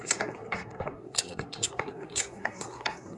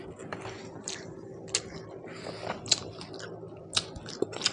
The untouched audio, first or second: second